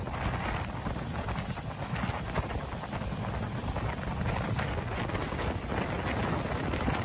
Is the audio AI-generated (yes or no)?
no